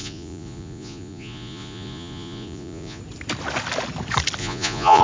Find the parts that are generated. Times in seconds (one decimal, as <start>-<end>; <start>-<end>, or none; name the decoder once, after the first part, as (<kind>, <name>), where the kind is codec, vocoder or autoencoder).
0.0-3.0 (vocoder, Vocos); 4.4-5.0